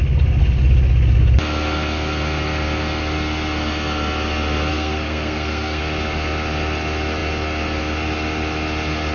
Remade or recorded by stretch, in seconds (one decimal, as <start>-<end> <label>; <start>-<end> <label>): 0.0-4.7 recorded; 4.7-5.8 remade; 5.8-9.1 recorded